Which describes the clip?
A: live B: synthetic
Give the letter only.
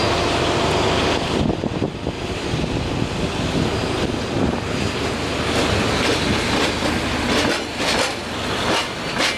A